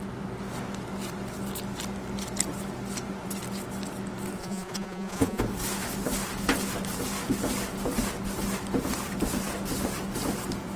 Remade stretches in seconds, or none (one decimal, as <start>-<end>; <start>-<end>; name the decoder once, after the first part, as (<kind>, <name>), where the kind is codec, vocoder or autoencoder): 4.4-5.4 (vocoder, Vocos)